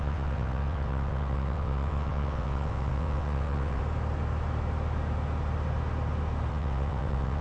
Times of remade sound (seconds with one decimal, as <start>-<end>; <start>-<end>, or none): 0.0-3.8; 6.5-7.4